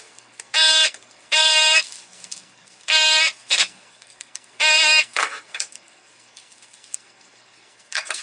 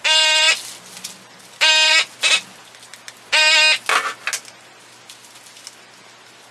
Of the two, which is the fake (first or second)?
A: first